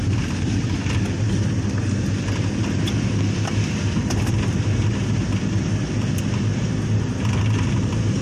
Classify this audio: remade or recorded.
recorded